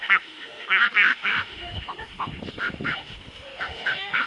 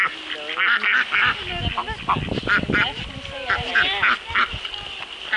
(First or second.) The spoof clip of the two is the first